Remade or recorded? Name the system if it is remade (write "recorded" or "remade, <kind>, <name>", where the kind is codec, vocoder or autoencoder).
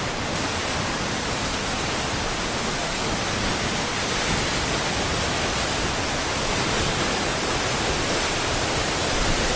recorded